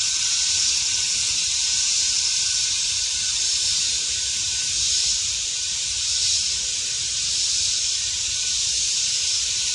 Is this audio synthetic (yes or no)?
yes